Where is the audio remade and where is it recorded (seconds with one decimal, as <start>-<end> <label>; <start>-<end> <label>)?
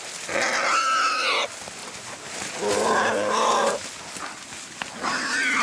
0.0-5.6 recorded